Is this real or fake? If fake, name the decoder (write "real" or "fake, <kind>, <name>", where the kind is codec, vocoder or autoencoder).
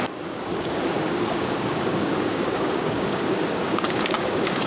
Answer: fake, codec, DAC